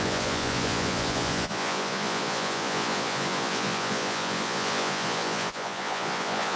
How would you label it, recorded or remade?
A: remade